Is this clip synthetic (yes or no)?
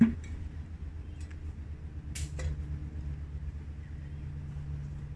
no